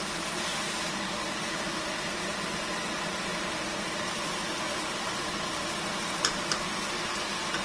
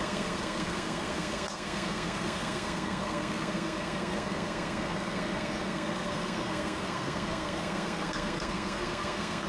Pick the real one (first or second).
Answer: first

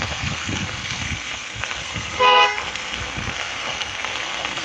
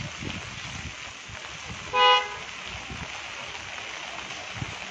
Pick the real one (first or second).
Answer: second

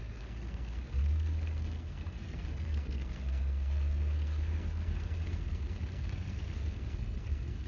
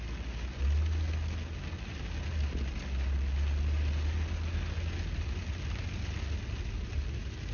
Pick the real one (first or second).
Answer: second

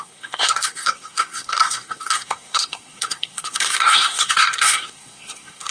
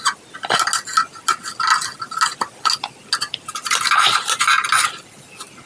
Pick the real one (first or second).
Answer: second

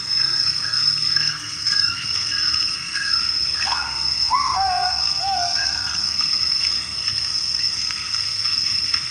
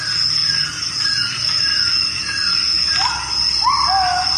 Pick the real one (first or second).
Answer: second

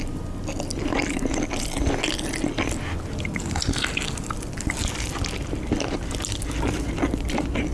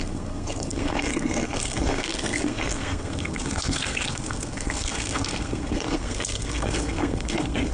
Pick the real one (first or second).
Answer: first